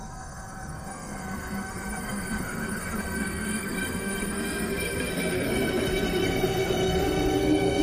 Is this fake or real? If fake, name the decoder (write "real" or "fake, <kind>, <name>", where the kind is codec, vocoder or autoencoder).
fake, codec, SNAC